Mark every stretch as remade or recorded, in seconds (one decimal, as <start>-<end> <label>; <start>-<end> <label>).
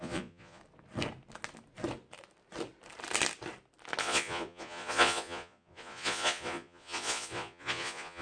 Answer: 0.0-0.6 remade; 0.6-4.0 recorded; 4.0-8.2 remade